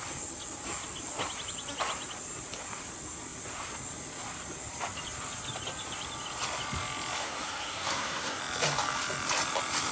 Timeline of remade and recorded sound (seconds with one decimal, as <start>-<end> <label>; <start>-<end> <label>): 0.0-7.2 recorded; 7.2-8.4 remade; 8.4-9.9 recorded